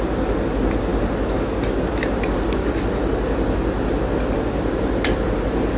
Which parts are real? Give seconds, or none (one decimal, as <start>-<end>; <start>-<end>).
0.0-5.8